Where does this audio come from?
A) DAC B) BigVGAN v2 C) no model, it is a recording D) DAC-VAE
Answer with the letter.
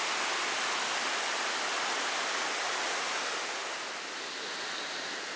C